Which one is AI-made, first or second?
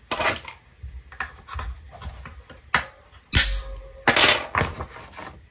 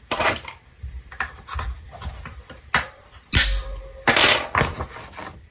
second